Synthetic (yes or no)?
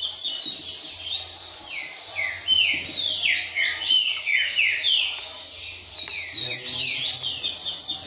no